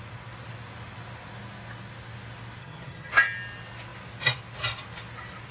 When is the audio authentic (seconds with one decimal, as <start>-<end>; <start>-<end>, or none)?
0.0-2.6; 3.1-5.5